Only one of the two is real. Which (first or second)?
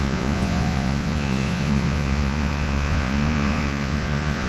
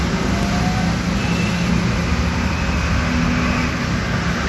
second